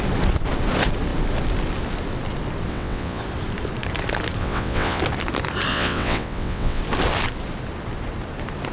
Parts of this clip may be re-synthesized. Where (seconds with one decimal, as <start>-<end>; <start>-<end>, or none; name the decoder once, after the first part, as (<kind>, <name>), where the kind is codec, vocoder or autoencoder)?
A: 2.7-3.2 (vocoder, WaveNeXt); 4.4-5.0; 5.7-6.8